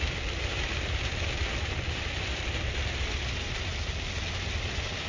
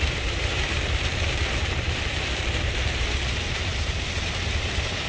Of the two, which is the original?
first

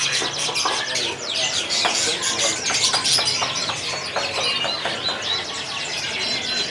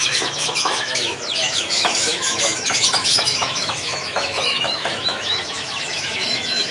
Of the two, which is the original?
first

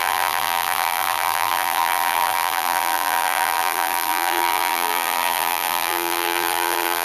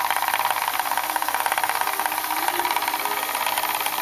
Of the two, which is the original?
second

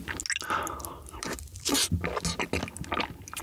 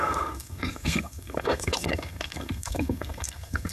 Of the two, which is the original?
first